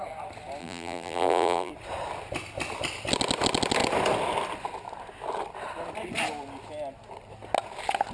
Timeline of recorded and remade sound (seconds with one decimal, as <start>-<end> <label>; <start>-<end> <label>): 0.0-0.6 recorded; 0.6-1.7 remade; 1.7-8.1 recorded